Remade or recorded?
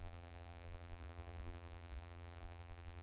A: remade